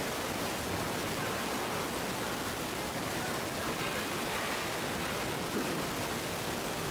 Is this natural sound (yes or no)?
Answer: yes